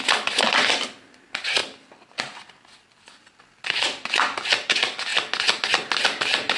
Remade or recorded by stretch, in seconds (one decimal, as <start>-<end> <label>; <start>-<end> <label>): 0.0-6.6 recorded